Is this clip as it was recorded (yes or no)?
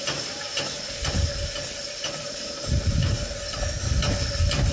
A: yes